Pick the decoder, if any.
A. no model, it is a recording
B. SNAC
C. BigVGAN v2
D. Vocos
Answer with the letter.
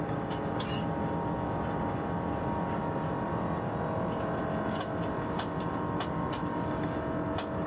A